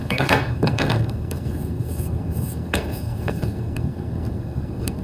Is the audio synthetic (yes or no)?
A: yes